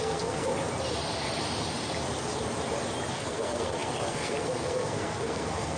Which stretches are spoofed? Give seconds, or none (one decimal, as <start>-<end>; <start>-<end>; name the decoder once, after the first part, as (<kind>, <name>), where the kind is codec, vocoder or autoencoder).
0.0-0.5 (codec, SNAC); 3.1-5.8